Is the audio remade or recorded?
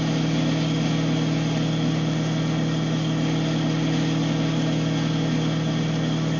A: recorded